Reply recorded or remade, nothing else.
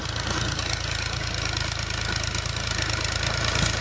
recorded